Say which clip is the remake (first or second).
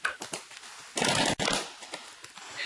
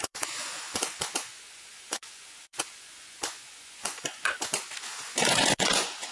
second